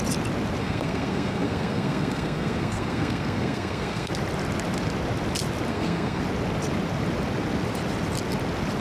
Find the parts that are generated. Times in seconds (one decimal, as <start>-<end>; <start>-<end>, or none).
0.6-4.1; 5.7-6.2